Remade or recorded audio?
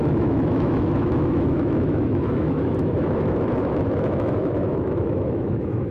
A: remade